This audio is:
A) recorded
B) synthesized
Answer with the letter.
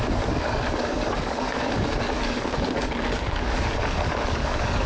B